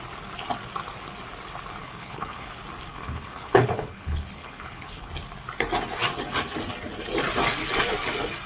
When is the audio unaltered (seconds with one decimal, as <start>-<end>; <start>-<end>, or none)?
0.0-1.8; 2.5-2.9; 5.1-8.5